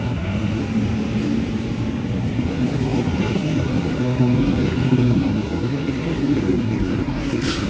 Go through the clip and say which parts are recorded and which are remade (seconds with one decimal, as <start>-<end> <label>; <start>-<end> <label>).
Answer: 0.0-0.6 remade; 0.6-2.2 recorded; 2.2-7.7 remade